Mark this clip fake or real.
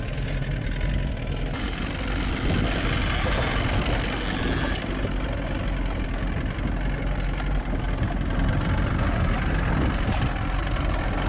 real